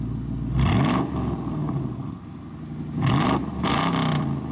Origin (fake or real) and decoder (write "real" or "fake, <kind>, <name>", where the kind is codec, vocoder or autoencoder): real